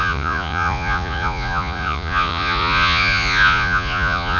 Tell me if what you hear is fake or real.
fake